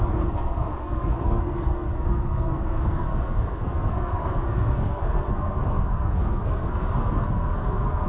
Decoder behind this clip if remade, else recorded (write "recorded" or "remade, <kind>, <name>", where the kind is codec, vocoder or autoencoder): remade, codec, SNAC